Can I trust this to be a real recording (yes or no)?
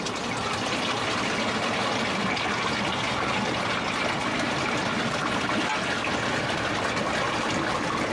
yes